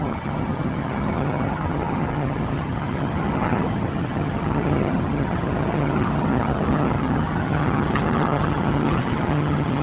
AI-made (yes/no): yes